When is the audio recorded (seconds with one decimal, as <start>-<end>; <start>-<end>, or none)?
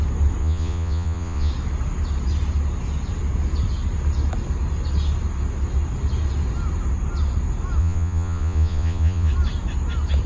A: 0.0-0.4; 1.5-7.8; 9.3-10.3